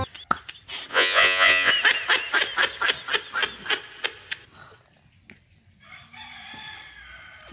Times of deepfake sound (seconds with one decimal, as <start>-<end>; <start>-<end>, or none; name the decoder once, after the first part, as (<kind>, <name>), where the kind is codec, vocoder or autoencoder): 0.9-1.7 (vocoder, Vocos)